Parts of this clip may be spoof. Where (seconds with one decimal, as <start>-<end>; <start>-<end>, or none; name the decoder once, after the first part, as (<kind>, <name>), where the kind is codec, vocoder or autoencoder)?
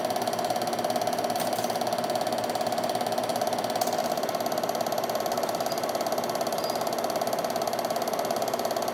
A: none